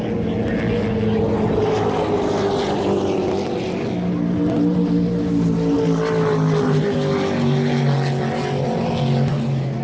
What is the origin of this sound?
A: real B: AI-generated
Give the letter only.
A